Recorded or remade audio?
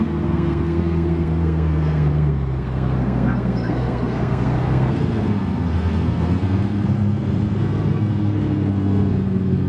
remade